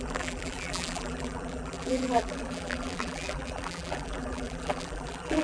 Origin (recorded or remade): remade